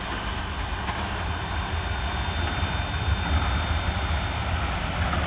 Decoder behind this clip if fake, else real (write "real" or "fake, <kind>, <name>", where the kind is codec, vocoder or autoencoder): real